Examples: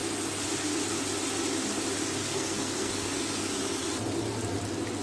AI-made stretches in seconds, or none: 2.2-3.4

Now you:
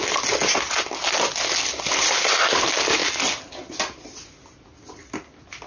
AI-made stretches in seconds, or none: none